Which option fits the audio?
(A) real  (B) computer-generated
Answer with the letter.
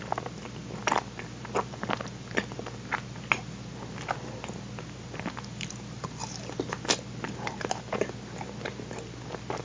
A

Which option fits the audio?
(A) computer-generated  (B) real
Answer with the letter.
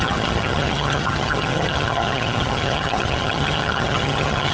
A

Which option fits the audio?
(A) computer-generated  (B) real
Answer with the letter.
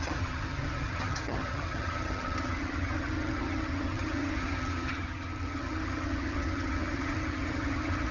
A